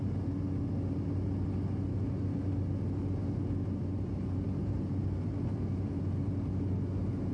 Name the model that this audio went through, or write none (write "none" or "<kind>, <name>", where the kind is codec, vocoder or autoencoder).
none